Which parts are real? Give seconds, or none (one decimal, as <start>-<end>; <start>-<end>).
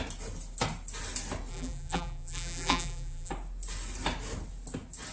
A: 0.0-1.5; 3.3-5.1